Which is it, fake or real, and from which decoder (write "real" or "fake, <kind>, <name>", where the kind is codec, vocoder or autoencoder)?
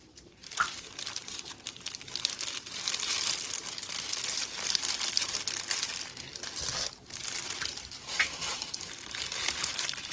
real